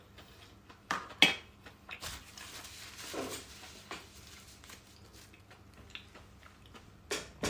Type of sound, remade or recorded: recorded